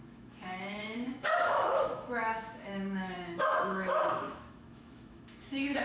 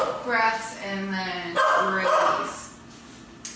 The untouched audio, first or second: second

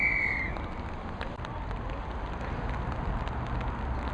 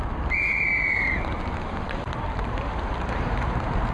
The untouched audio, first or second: first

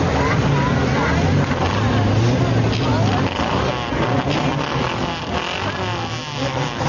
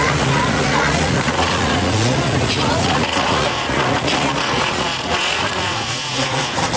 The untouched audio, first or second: first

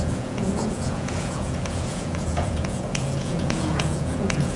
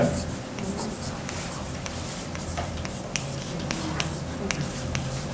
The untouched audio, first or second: second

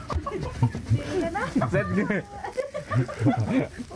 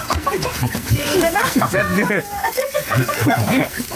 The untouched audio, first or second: first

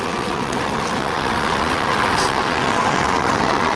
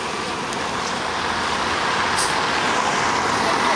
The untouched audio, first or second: second